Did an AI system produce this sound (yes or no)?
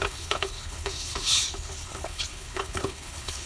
yes